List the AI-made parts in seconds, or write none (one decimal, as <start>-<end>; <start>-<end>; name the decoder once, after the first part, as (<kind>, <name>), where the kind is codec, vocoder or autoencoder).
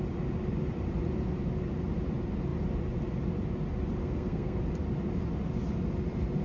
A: 4.0-4.6 (codec, SNAC)